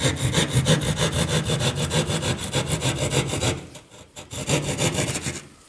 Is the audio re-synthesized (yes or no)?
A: no